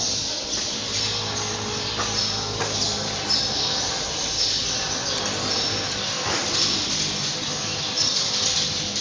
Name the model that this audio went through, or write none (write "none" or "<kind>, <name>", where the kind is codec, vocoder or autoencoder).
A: none